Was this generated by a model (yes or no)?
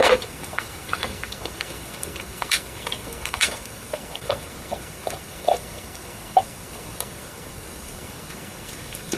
yes